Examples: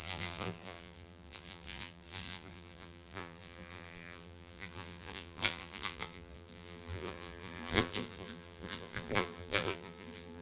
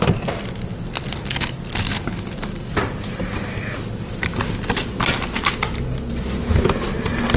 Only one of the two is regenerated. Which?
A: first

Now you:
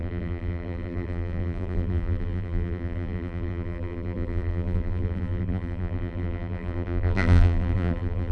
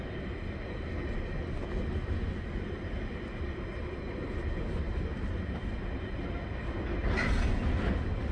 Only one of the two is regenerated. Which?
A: first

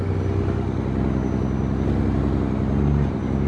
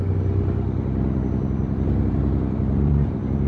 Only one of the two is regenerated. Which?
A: second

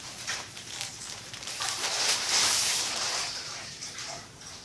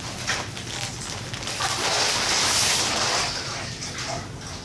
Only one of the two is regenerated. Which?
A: first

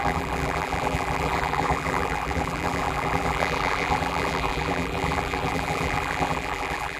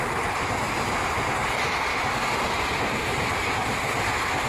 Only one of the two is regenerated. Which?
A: first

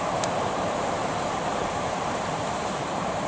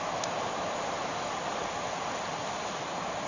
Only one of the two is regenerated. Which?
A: first